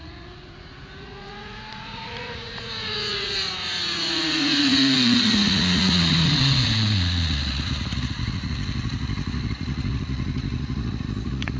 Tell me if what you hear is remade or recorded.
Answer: remade